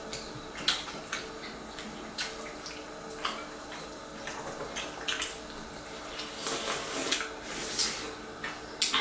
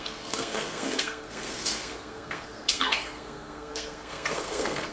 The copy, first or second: second